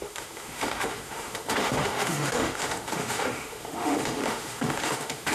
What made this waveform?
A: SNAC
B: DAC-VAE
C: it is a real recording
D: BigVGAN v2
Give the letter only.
B